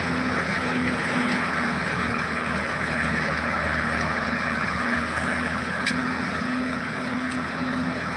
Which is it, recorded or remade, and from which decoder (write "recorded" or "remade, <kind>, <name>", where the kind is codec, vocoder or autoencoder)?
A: remade, codec, HILCodec